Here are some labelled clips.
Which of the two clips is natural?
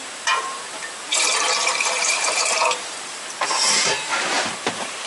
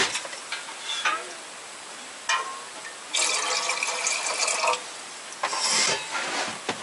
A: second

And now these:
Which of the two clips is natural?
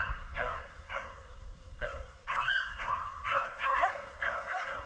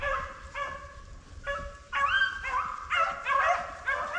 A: second